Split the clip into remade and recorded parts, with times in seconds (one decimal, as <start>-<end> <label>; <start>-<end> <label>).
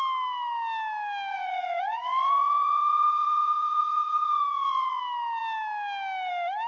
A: 0.0-1.3 recorded; 1.3-5.0 remade; 5.0-6.7 recorded